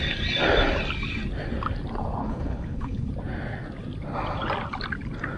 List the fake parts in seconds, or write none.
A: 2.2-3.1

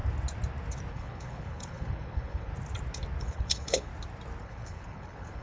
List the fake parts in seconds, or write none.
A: 0.9-2.5; 3.2-3.9; 4.4-5.4

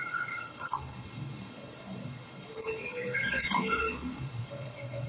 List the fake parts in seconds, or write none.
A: 0.0-5.1

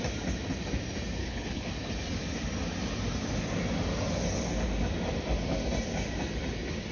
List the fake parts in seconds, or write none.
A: 1.2-1.7

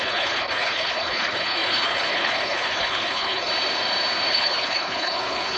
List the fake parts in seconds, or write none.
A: 0.0-3.5; 4.3-5.6

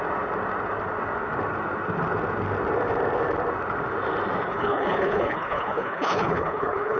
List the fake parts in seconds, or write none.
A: 4.4-7.0

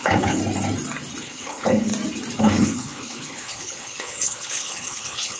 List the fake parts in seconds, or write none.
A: 0.0-0.4; 1.2-1.9; 2.4-5.4

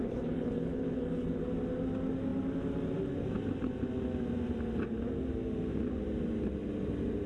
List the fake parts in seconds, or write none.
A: 0.0-1.4